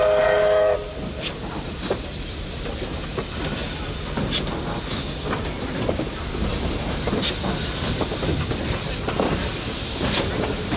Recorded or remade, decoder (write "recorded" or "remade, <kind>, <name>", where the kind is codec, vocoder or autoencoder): recorded